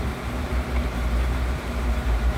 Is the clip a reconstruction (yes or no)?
yes